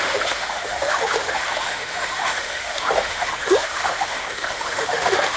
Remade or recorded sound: remade